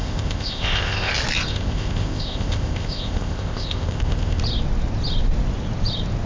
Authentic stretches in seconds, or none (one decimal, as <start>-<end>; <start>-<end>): 1.1-1.5; 4.4-6.3

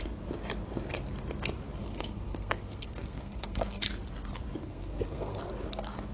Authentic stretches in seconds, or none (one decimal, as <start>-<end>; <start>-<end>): 0.0-1.8; 3.9-4.6; 5.4-6.1

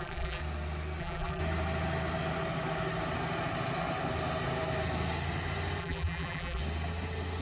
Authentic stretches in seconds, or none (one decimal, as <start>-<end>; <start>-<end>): 0.4-1.0; 1.4-5.8; 6.6-7.4

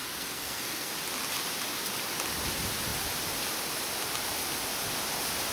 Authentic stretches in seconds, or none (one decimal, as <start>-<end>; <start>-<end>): 0.9-5.5

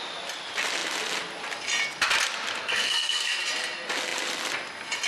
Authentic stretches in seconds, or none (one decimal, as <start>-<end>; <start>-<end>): 0.0-2.6; 3.4-5.1